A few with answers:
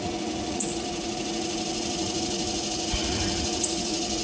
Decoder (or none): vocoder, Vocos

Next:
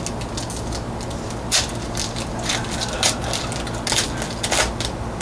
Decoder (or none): none